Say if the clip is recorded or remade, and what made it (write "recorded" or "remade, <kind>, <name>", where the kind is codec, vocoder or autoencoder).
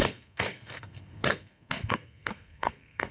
remade, codec, SNAC